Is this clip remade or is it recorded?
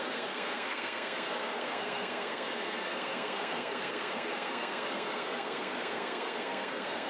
remade